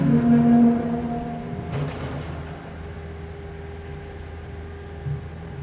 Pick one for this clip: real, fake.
real